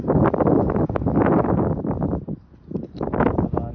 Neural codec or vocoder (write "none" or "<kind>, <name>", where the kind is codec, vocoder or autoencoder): none